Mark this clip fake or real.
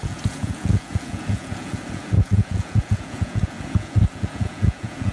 fake